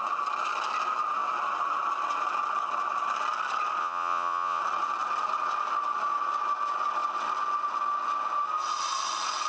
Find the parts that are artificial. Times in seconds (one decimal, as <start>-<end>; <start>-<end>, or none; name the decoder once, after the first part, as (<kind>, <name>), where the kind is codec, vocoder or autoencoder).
3.8-4.6 (vocoder, Vocos)